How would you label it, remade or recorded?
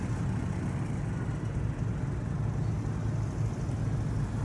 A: recorded